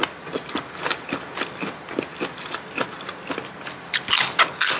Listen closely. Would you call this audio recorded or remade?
recorded